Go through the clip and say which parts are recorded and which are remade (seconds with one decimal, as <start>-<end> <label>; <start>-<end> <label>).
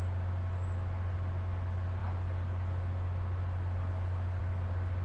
0.0-5.0 recorded